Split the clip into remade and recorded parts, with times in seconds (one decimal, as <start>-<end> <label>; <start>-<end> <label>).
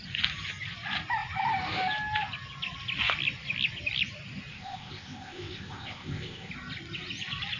0.0-4.5 recorded; 4.5-6.5 remade; 6.5-7.6 recorded